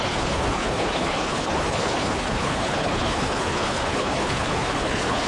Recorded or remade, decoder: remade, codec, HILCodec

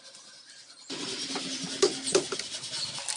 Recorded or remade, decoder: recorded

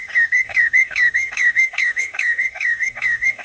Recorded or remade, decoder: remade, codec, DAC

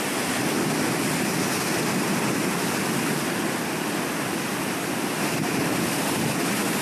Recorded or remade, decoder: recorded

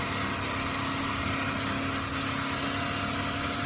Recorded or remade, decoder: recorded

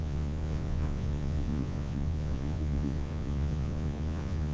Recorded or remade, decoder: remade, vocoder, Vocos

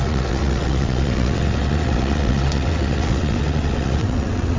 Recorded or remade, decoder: remade, vocoder, WaveNeXt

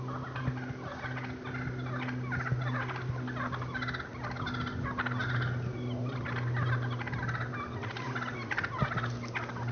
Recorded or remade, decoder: recorded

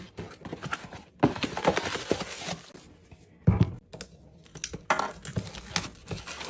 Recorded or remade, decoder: recorded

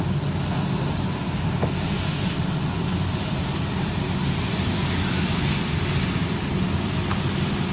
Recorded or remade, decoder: recorded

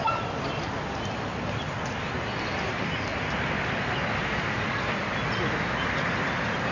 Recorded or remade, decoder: recorded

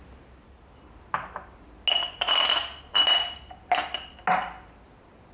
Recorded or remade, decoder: recorded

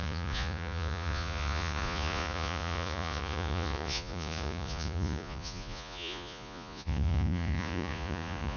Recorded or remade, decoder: remade, vocoder, Vocos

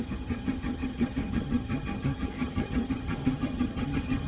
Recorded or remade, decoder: remade, vocoder, HiFi-GAN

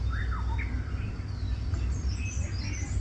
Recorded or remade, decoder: recorded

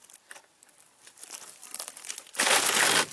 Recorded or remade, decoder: recorded